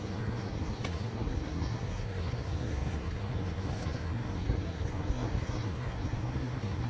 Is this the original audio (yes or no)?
no